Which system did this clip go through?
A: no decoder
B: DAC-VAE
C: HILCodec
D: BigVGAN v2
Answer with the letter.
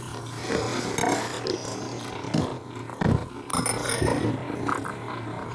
A